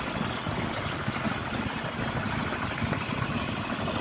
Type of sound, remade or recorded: recorded